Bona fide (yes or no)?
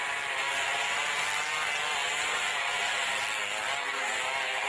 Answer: yes